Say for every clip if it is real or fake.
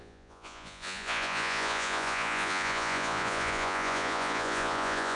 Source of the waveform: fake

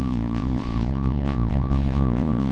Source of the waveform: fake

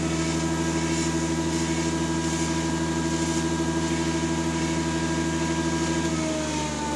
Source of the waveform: real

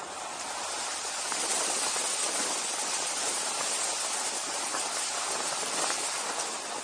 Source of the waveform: real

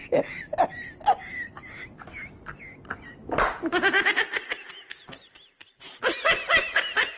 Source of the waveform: real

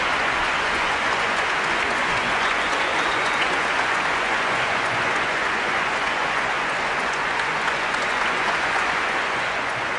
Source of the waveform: fake